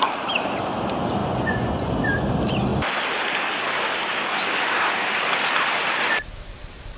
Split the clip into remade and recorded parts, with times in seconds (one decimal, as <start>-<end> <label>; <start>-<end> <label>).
0.0-1.2 recorded; 1.2-1.9 remade; 1.9-7.0 recorded